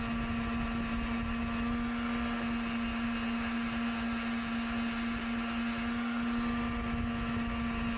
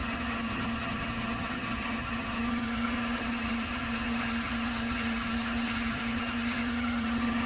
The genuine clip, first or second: first